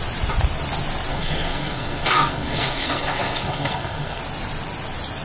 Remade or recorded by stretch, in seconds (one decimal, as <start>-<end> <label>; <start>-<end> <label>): 0.0-1.1 recorded; 1.1-4.2 remade; 4.2-5.2 recorded